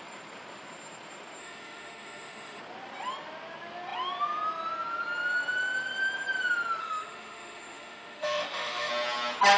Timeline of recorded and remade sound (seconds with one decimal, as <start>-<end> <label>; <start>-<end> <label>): 0.0-1.4 recorded; 1.4-2.6 remade; 2.6-6.8 recorded; 6.8-8.9 remade; 8.9-9.6 recorded